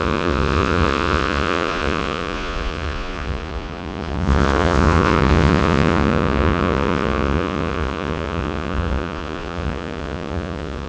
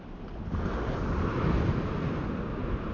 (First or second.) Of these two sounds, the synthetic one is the first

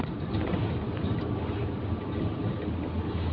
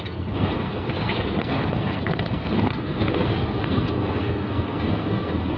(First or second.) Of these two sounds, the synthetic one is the second